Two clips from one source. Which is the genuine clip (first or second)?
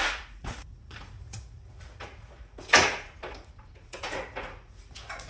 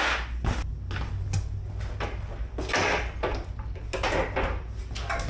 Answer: second